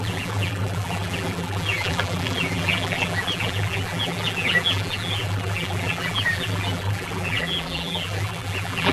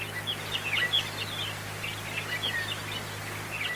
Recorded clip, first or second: second